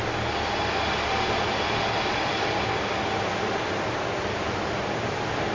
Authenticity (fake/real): real